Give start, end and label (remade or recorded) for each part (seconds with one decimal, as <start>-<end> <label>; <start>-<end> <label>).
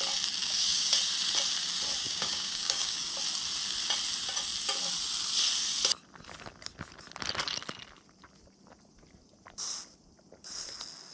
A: 0.0-0.4 recorded; 0.4-1.0 remade; 1.0-2.0 recorded; 2.0-3.1 remade; 3.1-11.1 recorded